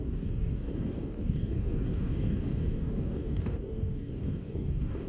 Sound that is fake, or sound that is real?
fake